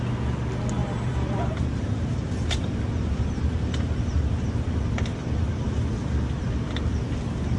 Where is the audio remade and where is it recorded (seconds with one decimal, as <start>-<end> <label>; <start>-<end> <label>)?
0.0-0.8 recorded; 0.8-4.7 remade; 4.7-5.2 recorded; 5.2-5.8 remade; 5.8-6.9 recorded; 6.9-7.6 remade